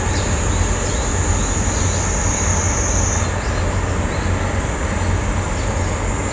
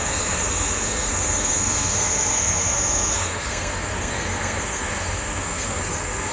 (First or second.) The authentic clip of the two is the first